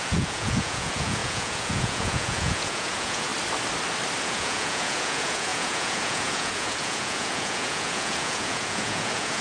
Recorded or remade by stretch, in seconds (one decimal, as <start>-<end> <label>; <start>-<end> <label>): 0.0-3.3 remade; 3.3-4.2 recorded; 4.2-9.4 remade